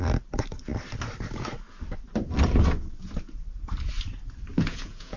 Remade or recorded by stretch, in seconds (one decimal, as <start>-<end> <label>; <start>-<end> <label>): 0.0-4.5 recorded; 4.5-5.2 remade